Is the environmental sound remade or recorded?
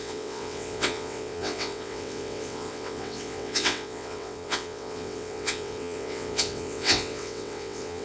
remade